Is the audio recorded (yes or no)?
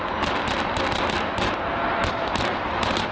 yes